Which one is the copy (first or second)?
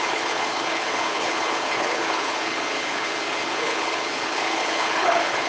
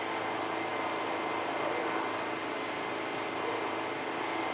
first